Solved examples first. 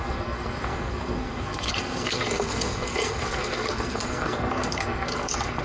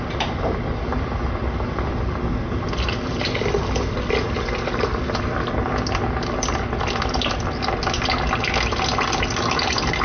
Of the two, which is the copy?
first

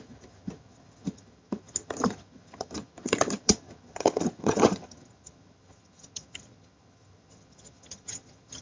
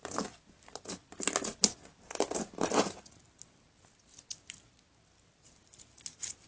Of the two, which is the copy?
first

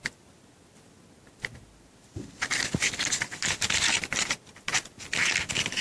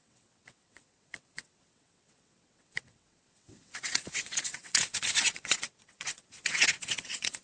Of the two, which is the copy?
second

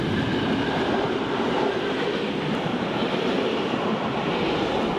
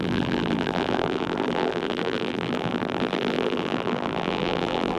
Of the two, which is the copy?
second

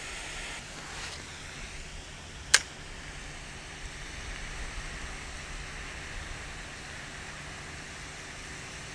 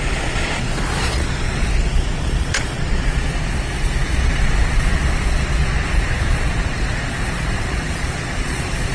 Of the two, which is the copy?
second